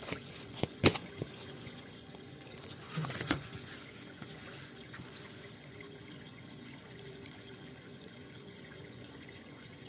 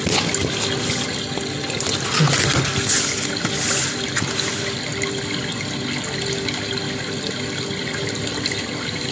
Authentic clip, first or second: second